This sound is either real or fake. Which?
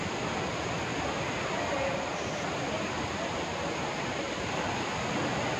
real